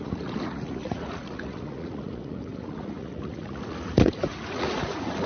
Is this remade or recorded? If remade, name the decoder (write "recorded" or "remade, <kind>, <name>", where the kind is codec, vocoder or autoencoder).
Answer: remade, vocoder, Vocos